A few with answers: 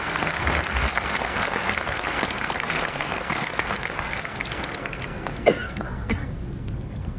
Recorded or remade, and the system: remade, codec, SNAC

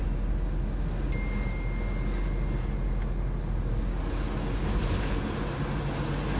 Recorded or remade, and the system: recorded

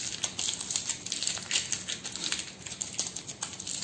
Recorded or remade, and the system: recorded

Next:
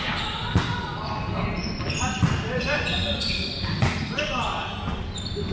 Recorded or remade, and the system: recorded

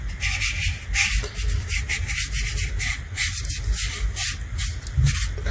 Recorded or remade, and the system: recorded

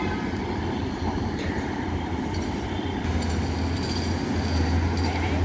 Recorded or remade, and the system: recorded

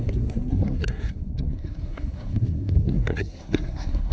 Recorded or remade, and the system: remade, codec, SNAC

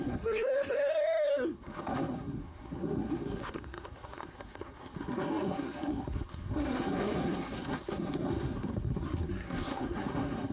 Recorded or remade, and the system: remade, codec, SNAC